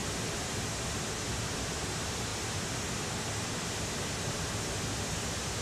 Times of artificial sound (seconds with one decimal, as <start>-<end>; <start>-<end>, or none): none